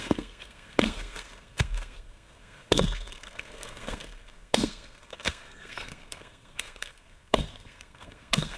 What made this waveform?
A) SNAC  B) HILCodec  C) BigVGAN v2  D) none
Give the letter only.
A